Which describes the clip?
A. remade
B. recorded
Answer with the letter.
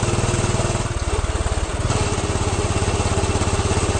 B